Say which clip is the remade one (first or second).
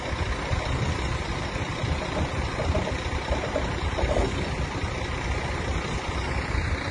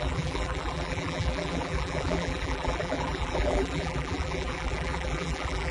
second